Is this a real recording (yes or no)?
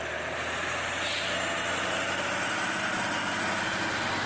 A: yes